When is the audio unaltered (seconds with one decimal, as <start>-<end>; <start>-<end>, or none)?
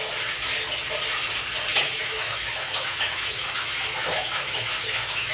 0.0-1.7